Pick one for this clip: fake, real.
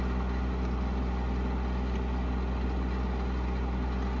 real